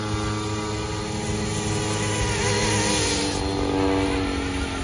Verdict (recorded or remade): recorded